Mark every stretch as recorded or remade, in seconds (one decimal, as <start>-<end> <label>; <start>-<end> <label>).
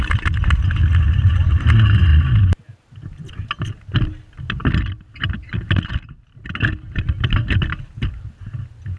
0.0-9.0 recorded